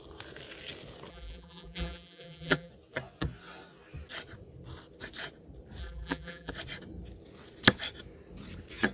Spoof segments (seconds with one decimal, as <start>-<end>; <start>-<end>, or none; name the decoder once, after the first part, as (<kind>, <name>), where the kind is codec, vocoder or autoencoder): 1.1-2.7 (vocoder, BigVGAN v2); 5.8-6.5